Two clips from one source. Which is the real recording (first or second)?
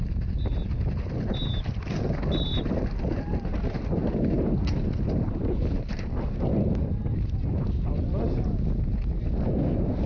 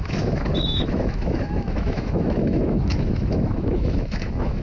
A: first